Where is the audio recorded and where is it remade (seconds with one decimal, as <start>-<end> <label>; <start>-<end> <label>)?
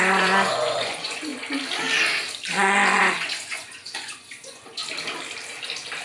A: 0.0-1.3 remade; 1.3-3.0 recorded; 3.0-4.8 remade; 4.8-6.0 recorded